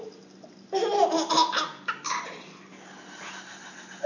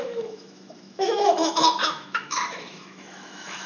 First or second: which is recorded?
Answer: first